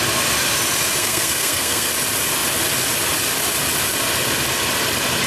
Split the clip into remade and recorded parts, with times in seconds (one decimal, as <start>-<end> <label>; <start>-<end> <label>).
0.0-1.0 recorded; 1.0-1.9 remade; 1.9-5.3 recorded